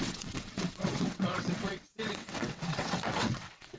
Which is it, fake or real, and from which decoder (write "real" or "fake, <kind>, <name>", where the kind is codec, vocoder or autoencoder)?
fake, vocoder, WaveNeXt